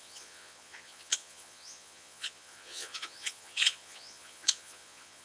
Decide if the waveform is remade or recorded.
remade